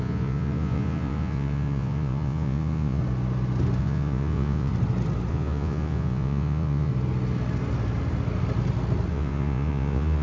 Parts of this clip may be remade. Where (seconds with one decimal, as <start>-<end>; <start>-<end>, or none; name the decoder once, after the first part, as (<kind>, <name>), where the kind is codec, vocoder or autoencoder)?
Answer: 0.0-3.0 (vocoder, Vocos); 3.8-4.7; 5.3-6.9; 9.1-10.2